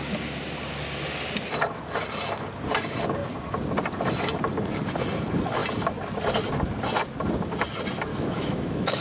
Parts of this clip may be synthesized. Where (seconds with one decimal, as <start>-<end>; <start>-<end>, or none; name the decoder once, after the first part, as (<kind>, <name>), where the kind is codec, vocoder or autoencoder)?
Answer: 8.1-9.0 (autoencoder, DAC-VAE)

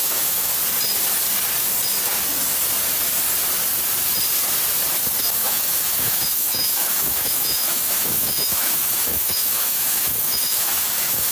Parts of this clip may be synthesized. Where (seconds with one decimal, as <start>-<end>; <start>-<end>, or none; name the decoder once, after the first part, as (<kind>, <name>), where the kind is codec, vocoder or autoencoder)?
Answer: 0.0-0.5 (autoencoder, DAC-VAE); 5.2-11.3